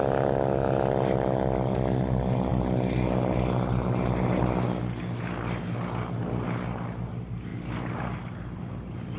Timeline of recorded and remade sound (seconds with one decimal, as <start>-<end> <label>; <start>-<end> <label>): 0.0-9.2 recorded